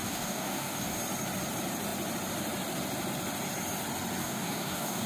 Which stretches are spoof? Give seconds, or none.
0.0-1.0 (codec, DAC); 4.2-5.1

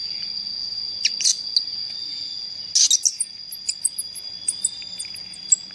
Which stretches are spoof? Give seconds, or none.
none

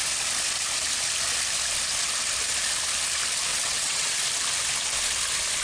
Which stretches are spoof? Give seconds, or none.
3.5-4.2 (vocoder, WaveNeXt)

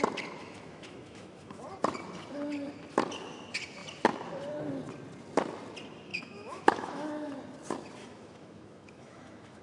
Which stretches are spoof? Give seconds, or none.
0.4-1.6 (autoencoder, DAC-VAE); 6.1-7.3; 8.0-9.6

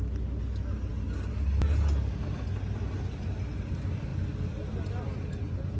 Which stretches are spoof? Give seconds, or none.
none

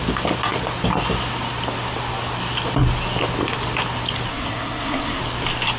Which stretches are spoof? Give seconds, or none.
4.3-5.2 (codec, SNAC)